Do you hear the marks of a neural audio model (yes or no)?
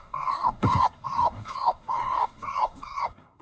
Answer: yes